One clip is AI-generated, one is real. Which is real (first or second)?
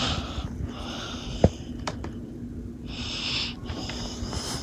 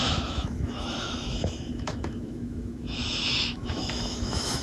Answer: first